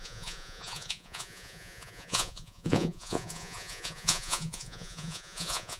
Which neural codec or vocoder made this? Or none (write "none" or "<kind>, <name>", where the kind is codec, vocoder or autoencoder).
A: vocoder, Vocos